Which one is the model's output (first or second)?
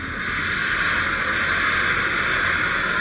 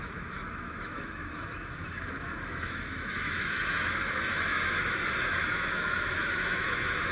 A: second